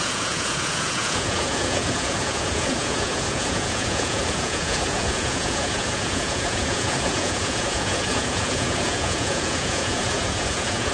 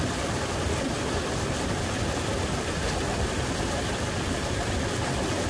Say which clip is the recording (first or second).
second